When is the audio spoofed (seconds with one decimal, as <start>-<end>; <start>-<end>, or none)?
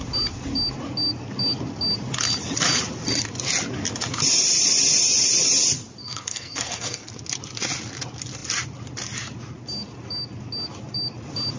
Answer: 6.0-7.1